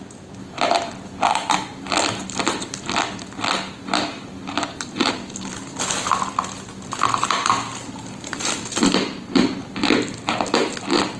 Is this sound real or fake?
real